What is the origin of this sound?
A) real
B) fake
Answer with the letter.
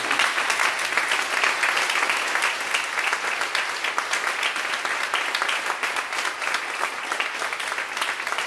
A